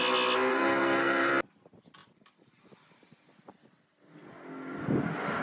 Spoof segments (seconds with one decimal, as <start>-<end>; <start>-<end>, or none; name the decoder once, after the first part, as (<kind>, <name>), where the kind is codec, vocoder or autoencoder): 0.5-1.3 (codec, SNAC)